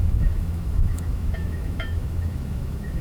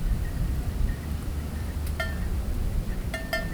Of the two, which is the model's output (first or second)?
first